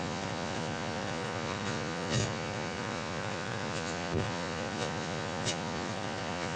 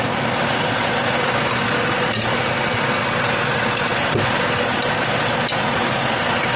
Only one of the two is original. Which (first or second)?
second